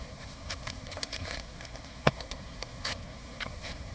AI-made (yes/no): yes